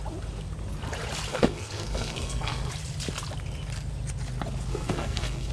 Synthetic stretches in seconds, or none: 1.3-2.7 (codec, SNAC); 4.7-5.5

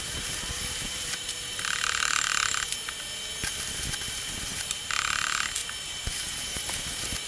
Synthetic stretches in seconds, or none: 0.0-2.3 (vocoder, BigVGAN v2); 4.1-7.3

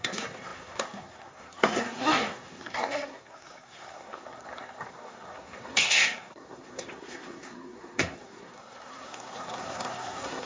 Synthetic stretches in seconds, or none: 0.0-10.5 (codec, SNAC)